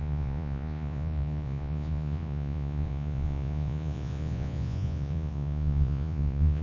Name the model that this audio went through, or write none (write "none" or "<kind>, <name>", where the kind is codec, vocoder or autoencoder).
vocoder, Vocos